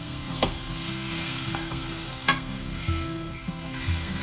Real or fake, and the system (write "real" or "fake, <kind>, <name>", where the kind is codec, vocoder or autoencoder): fake, codec, SNAC